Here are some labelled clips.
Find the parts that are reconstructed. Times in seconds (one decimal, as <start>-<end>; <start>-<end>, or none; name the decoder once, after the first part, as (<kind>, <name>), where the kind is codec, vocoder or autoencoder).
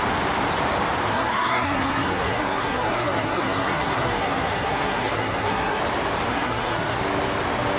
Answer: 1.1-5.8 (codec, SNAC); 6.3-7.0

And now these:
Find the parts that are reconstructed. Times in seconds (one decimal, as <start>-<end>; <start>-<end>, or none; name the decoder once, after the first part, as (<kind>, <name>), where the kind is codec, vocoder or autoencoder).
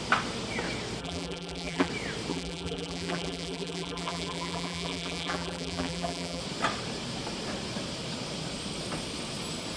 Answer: 1.0-1.9 (vocoder, BigVGAN v2); 2.3-6.4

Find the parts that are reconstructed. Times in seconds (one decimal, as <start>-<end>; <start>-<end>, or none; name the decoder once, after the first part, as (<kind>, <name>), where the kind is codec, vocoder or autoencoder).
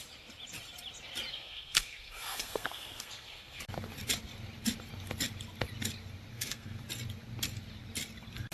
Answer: 1.3-3.6 (codec, SNAC); 6.3-6.8